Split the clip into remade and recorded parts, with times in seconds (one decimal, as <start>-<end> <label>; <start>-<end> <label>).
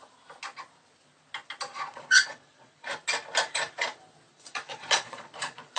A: 0.0-1.7 recorded; 1.7-2.9 remade; 2.9-4.3 recorded; 4.3-5.8 remade